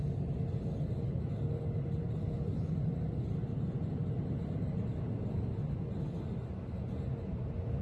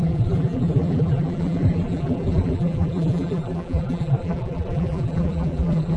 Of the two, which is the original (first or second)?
first